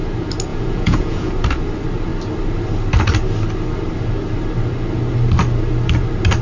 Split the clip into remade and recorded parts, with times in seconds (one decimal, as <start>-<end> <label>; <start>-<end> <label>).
0.0-0.5 recorded; 0.5-1.3 remade; 1.3-6.4 recorded